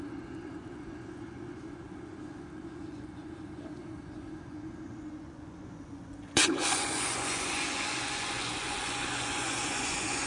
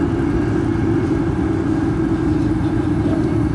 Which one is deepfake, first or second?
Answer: first